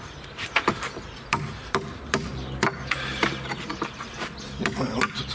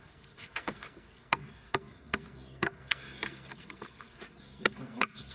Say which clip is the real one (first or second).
first